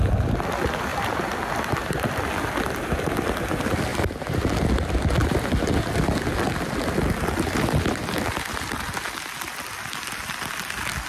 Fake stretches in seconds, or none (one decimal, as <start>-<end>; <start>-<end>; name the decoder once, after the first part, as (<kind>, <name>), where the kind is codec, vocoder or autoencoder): 0.9-2.3 (vocoder, BigVGAN v2)